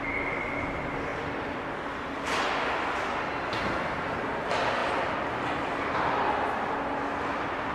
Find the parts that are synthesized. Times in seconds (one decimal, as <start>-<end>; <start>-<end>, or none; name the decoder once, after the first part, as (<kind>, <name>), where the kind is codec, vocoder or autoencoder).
none